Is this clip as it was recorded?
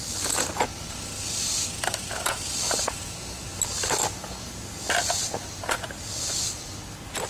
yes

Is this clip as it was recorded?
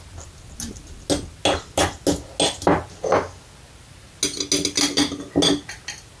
yes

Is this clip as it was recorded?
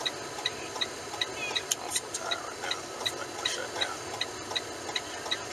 yes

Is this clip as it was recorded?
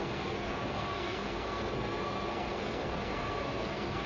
no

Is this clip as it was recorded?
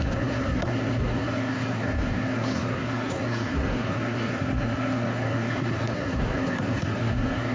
no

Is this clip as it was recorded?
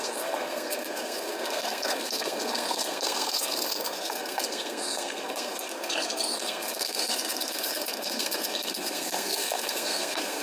no